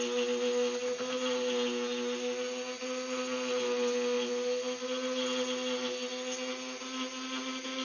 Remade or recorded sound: recorded